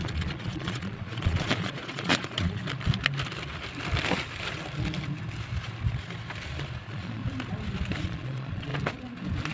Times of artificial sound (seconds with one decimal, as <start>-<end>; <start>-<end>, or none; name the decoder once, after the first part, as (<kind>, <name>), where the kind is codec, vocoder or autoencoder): 0.0-2.6 (vocoder, Vocos); 6.8-7.2; 8.0-8.7